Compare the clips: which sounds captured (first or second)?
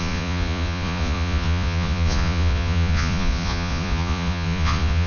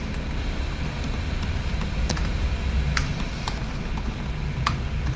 second